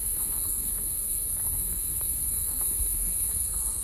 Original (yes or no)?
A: no